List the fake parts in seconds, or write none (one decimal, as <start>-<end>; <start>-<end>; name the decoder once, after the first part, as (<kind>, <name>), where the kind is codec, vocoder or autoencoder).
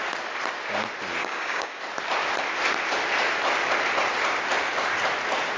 1.2-1.8 (codec, DAC)